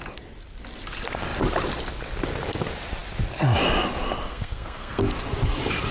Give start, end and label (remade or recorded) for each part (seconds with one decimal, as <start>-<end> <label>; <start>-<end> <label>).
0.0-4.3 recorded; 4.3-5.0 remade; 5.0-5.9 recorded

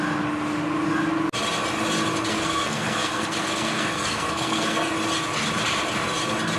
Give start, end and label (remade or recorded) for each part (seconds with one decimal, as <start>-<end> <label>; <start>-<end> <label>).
0.0-2.3 recorded; 2.3-4.9 remade; 4.9-6.6 recorded

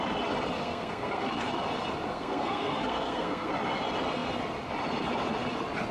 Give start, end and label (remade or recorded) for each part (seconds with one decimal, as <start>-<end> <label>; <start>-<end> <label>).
0.0-0.6 recorded; 0.6-1.3 remade; 1.3-2.1 recorded; 2.1-3.5 remade; 3.5-5.9 recorded

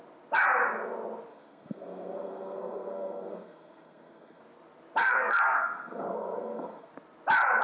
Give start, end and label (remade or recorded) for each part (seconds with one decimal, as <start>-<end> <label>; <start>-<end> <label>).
0.0-1.3 recorded; 1.3-4.4 remade; 4.4-5.0 recorded; 5.0-6.9 remade; 6.9-7.6 recorded